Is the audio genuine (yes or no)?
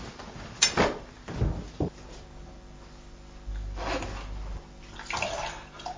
yes